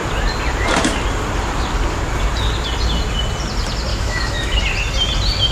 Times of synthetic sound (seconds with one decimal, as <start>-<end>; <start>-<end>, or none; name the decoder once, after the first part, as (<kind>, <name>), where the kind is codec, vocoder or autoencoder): 3.9-4.6 (autoencoder, DAC-VAE)